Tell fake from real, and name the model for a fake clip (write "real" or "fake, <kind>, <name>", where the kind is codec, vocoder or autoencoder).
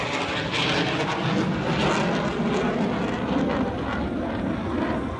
real